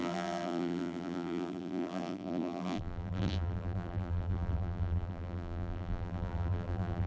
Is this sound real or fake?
fake